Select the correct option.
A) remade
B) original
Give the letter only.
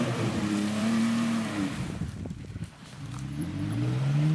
A